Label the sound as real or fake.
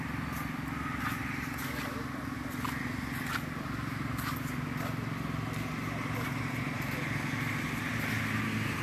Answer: real